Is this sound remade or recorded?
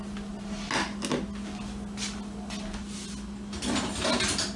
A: recorded